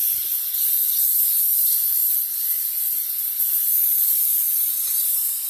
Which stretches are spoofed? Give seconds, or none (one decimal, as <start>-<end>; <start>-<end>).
none